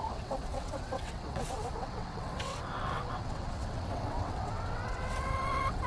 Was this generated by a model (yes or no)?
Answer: yes